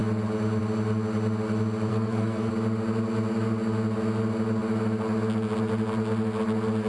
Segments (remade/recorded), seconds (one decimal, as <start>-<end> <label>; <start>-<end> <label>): 0.0-1.9 recorded; 1.9-2.5 remade; 2.5-6.9 recorded